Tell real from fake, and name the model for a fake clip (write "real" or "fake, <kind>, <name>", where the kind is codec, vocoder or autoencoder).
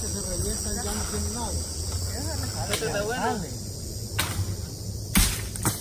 real